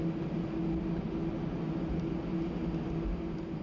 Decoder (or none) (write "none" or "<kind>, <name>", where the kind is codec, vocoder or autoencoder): none